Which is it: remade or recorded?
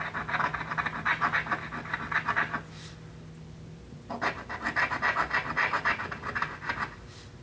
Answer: recorded